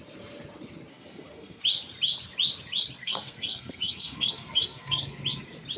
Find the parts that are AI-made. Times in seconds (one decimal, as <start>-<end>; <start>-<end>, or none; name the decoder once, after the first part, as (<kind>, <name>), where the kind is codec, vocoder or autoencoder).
0.9-1.6 (codec, SNAC); 3.0-5.2